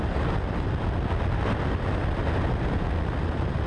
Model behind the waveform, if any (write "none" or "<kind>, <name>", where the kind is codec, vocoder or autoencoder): none